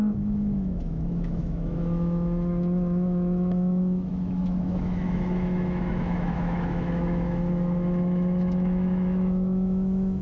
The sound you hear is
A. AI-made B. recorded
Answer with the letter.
A